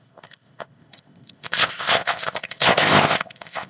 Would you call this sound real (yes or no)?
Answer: no